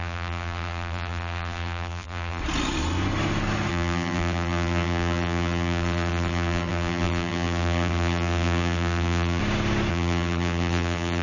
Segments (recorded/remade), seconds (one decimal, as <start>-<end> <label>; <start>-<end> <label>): 0.0-2.4 remade; 2.4-3.7 recorded; 3.7-9.4 remade; 9.4-9.9 recorded; 9.9-11.2 remade